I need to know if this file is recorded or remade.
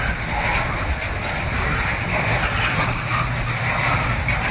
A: recorded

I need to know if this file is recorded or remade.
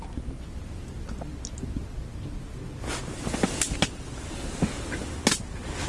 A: recorded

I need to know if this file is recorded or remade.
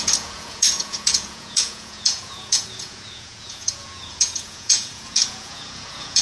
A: remade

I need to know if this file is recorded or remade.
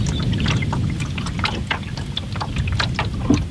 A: recorded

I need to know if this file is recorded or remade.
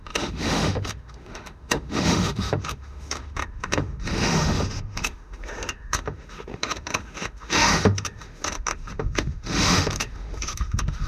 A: remade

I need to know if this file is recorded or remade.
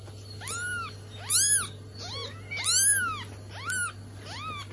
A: recorded